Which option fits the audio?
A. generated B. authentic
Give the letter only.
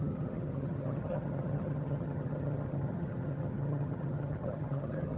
A